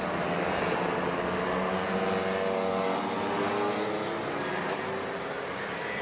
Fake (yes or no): no